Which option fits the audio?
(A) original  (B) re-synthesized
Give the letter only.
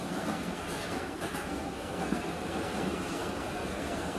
B